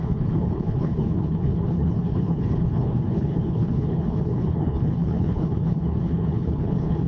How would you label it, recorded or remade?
remade